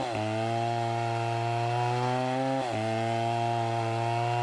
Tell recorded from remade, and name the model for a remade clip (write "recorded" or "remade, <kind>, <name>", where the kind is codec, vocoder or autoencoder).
recorded